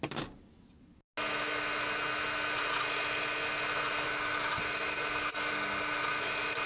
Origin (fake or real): real